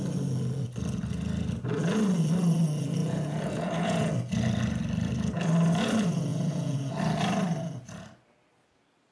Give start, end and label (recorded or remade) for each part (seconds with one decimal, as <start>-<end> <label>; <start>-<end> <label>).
0.0-3.0 recorded; 3.0-4.1 remade; 4.1-6.3 recorded; 6.3-6.9 remade; 6.9-9.1 recorded